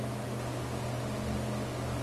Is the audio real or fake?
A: real